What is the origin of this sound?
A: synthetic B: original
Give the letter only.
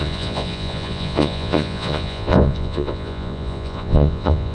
A